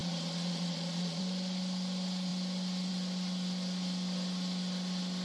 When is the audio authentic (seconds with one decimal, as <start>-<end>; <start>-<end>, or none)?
1.2-5.2